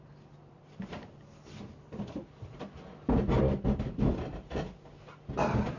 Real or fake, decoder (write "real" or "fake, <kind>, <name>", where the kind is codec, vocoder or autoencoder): real